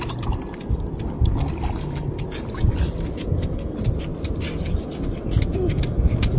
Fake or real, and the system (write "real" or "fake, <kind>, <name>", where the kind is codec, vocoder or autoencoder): real